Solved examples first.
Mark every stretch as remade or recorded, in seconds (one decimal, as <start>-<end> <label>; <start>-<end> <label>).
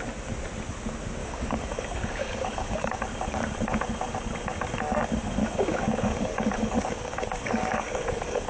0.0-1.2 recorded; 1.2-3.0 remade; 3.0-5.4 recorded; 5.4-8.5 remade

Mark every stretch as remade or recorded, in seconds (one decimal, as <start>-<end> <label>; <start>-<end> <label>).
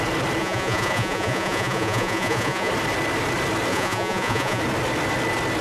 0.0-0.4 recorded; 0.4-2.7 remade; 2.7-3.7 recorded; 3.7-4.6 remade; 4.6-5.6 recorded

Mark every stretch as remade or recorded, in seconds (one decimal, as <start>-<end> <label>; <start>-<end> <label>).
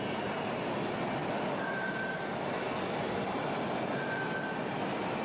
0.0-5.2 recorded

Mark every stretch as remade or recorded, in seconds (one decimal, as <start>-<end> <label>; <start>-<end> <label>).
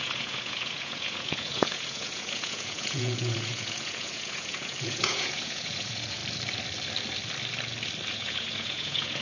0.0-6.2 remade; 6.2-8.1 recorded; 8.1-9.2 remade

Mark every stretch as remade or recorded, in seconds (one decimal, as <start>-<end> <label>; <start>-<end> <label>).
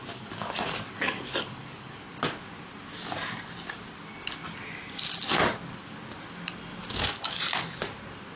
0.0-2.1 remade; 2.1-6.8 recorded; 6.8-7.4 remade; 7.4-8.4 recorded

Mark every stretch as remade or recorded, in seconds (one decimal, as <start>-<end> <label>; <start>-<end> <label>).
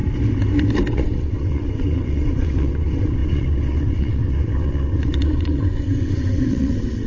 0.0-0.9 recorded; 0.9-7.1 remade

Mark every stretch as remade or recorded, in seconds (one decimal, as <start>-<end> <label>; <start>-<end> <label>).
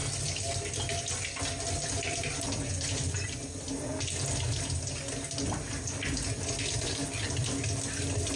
0.0-8.4 recorded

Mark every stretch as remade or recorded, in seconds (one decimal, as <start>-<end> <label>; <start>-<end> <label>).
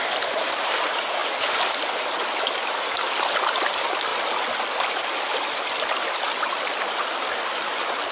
0.0-1.2 remade; 1.2-3.3 recorded; 3.3-4.1 remade; 4.1-6.9 recorded; 6.9-8.1 remade